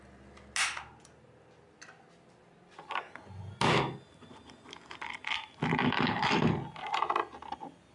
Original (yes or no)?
yes